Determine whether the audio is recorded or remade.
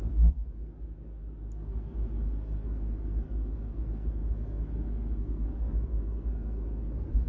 remade